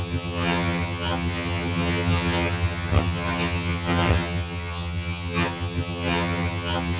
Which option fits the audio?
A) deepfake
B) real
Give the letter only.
A